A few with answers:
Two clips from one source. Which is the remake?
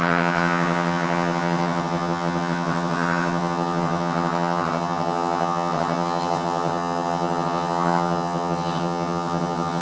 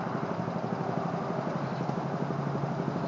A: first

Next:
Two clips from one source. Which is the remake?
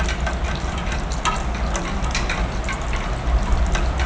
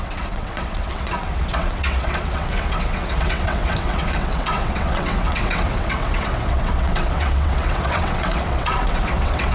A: second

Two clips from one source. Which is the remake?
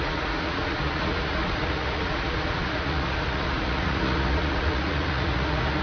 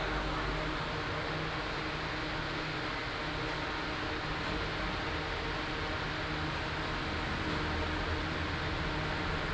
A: first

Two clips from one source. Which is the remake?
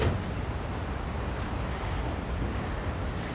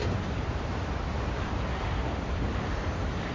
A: second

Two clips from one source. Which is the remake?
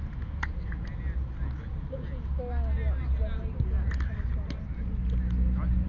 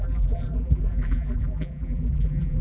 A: second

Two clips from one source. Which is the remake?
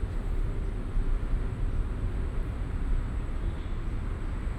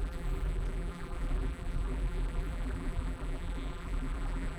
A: second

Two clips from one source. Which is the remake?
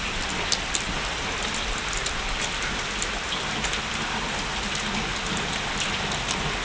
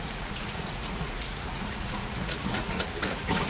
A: second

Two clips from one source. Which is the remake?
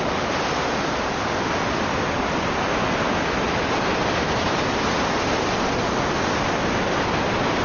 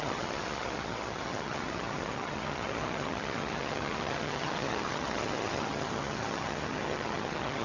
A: second